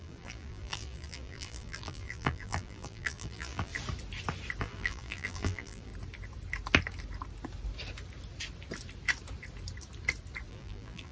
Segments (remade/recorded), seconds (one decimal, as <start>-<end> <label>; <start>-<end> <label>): 0.0-3.7 remade; 3.7-4.6 recorded; 4.6-5.9 remade; 5.9-10.5 recorded; 10.5-11.1 remade